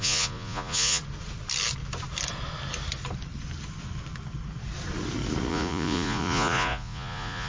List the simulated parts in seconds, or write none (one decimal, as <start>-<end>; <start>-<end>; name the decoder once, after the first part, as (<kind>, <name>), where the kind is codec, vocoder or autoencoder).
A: 0.0-1.0 (vocoder, Vocos); 5.5-7.5